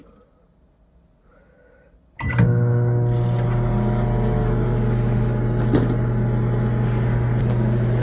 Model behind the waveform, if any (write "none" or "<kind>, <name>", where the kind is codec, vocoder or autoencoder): none